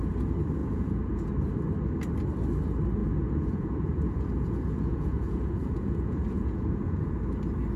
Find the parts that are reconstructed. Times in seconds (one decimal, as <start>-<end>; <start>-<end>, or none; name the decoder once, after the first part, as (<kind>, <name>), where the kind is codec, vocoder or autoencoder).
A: 0.6-1.3 (vocoder, Vocos); 3.0-7.1